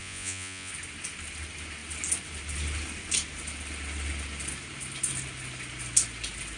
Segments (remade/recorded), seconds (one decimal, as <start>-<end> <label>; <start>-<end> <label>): 0.0-0.7 remade; 0.7-6.6 recorded